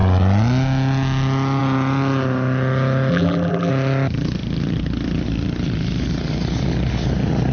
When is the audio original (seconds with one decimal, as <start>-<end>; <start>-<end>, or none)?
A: 0.0-3.1; 3.7-7.5